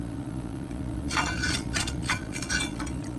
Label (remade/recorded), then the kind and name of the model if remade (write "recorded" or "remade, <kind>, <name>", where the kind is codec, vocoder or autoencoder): remade, vocoder, Vocos